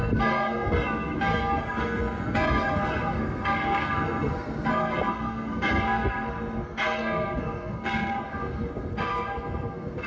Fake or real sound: fake